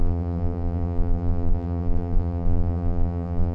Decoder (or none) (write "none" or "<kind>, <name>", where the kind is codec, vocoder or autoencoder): vocoder, BigVGAN v2